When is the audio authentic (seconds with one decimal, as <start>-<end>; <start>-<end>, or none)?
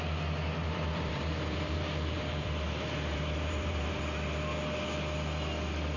0.0-0.6; 4.0-6.0